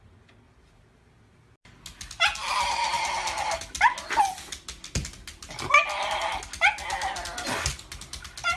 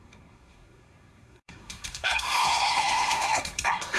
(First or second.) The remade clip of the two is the second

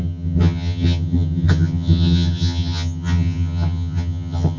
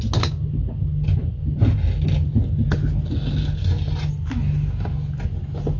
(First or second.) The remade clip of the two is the first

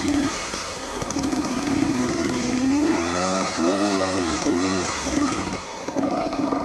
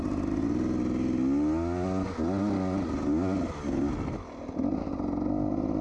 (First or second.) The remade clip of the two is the first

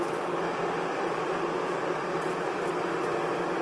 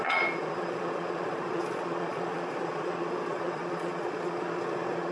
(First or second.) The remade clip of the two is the second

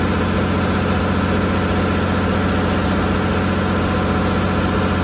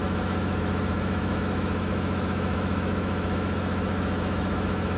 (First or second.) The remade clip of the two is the second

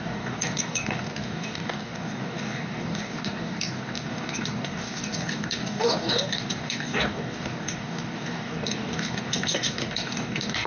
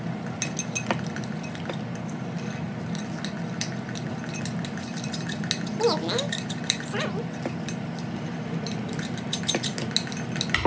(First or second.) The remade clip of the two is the first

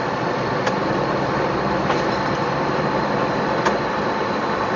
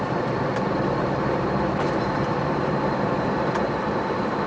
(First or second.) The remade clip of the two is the second